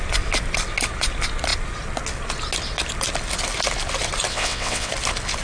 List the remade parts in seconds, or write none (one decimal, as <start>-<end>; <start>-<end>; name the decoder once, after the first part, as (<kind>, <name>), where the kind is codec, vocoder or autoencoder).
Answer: 4.3-4.9 (vocoder, WaveNeXt)